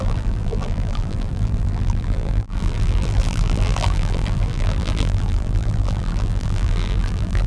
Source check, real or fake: fake